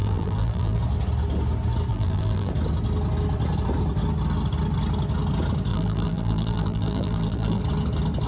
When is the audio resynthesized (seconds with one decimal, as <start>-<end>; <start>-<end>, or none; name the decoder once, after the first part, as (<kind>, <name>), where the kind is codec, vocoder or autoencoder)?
0.0-0.8 (vocoder, BigVGAN v2); 1.9-2.5; 5.7-7.6